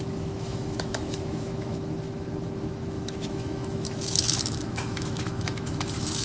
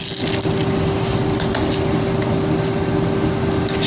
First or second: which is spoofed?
first